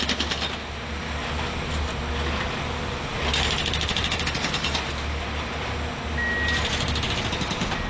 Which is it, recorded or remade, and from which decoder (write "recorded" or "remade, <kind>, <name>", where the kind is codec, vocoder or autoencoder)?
recorded